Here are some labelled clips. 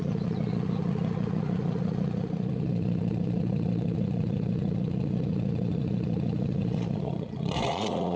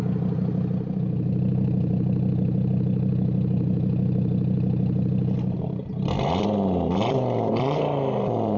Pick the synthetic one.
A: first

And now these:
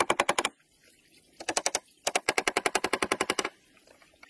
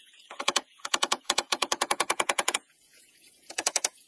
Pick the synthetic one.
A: second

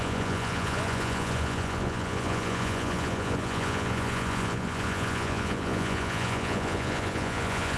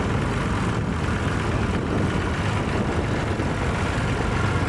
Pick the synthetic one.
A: first